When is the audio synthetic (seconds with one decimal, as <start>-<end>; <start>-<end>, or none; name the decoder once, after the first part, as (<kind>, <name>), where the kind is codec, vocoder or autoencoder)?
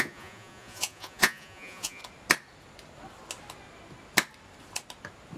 0.0-2.0 (vocoder, Vocos)